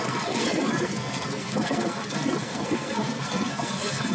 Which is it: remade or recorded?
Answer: remade